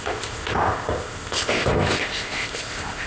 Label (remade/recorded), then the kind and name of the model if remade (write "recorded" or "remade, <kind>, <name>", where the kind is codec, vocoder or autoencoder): remade, codec, ZipCodec